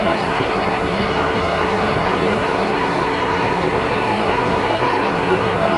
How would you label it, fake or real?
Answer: fake